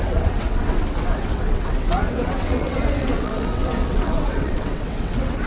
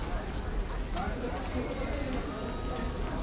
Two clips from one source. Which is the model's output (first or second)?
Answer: first